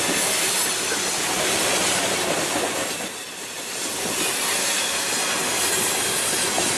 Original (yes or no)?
yes